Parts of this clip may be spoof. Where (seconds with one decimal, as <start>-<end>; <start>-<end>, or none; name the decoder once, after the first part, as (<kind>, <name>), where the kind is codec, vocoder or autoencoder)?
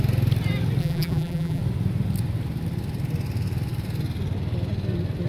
0.8-1.6 (vocoder, BigVGAN v2)